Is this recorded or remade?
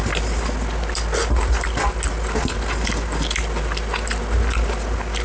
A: recorded